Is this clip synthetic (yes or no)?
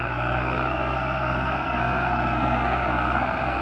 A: yes